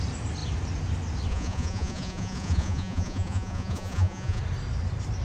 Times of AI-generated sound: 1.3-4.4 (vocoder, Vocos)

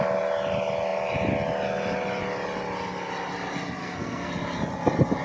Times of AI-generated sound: 3.8-4.3 (codec, SNAC)

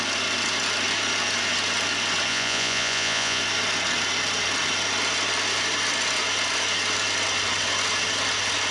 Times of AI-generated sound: 2.3-3.4 (vocoder, Vocos)

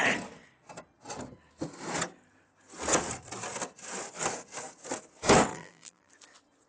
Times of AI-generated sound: 5.5-6.1 (vocoder, BigVGAN v2)

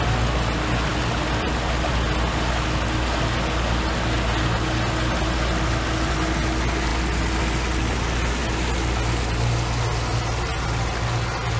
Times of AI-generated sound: none

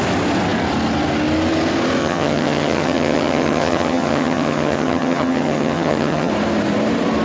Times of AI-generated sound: 2.0-6.3 (vocoder, HiFi-GAN)